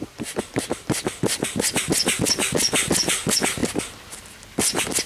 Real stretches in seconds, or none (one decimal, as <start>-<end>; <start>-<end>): 0.0-5.1